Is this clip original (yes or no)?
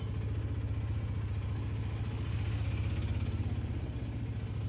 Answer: yes